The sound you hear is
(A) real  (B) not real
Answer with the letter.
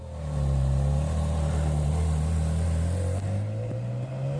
A